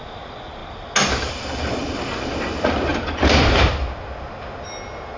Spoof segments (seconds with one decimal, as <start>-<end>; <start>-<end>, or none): 2.9-3.7